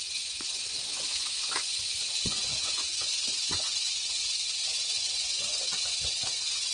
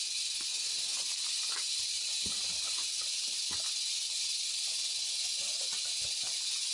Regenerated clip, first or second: first